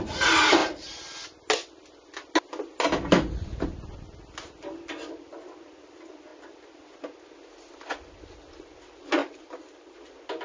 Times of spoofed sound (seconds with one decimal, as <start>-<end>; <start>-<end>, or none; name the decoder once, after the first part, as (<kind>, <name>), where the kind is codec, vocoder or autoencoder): 9.2-10.0 (vocoder, BigVGAN v2)

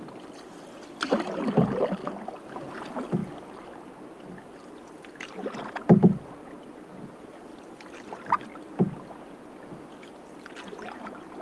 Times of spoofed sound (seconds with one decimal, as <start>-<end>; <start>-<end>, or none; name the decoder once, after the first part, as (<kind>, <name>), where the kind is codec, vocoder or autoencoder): none

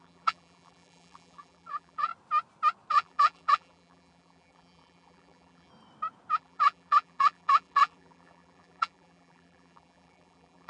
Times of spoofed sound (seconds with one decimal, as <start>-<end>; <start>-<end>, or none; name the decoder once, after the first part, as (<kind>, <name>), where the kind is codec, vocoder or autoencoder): 0.0-2.1 (vocoder, BigVGAN v2); 2.9-5.7; 6.3-10.7

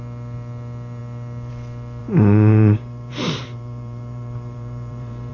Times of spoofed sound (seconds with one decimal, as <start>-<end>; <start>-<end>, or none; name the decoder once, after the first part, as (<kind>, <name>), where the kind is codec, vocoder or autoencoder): 2.0-5.3 (vocoder, BigVGAN v2)

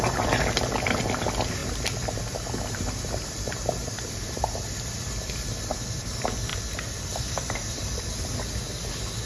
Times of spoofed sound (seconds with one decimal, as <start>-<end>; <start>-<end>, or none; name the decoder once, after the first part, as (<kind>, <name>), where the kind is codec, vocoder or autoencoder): none

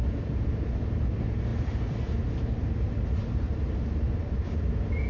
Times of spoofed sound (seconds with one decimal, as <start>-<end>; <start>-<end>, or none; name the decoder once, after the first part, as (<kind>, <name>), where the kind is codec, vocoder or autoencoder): 1.5-3.2 (vocoder, BigVGAN v2)

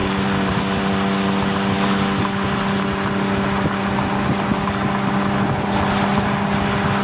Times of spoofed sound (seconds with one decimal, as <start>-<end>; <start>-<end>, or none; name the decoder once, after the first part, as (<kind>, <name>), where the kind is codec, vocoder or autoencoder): 0.0-0.6 (vocoder, BigVGAN v2)